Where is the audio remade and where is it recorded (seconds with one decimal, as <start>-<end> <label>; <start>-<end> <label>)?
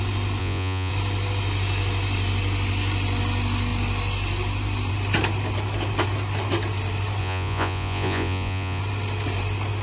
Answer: 0.0-0.4 recorded; 0.4-0.9 remade; 0.9-7.2 recorded; 7.2-8.8 remade; 8.8-9.8 recorded